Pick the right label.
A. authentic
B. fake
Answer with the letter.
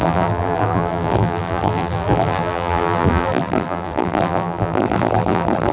B